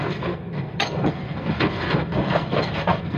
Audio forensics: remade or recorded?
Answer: remade